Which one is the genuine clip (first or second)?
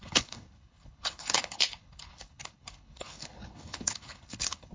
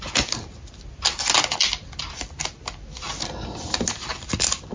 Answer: second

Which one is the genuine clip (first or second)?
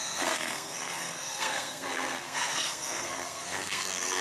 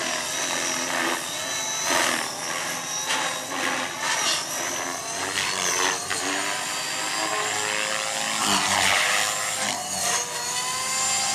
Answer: second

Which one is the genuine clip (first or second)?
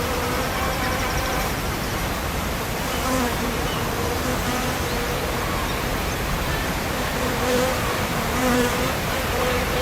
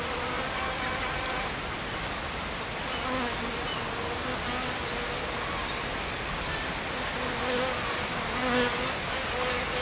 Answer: second